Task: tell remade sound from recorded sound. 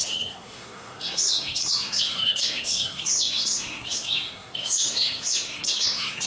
remade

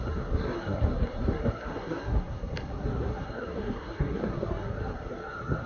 remade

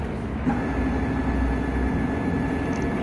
recorded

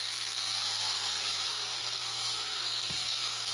remade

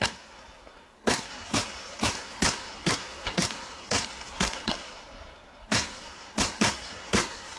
remade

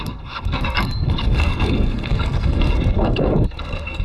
remade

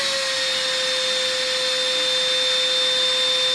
recorded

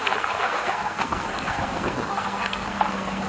remade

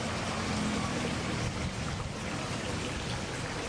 recorded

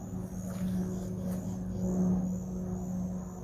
recorded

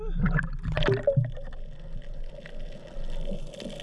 recorded